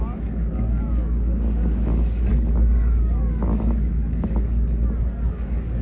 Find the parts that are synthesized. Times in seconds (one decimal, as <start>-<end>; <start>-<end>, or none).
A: 0.0-5.8